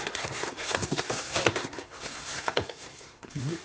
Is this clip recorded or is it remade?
remade